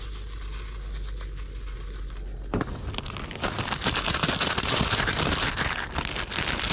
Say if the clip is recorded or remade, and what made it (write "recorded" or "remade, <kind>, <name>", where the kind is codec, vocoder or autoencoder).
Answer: recorded